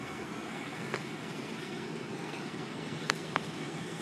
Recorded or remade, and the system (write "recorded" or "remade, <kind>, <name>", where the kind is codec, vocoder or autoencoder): remade, codec, SNAC